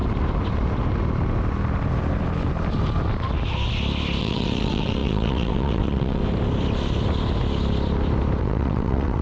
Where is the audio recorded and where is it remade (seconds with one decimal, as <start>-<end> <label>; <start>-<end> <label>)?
0.0-4.2 recorded; 4.2-6.2 remade; 6.2-8.4 recorded; 8.4-9.2 remade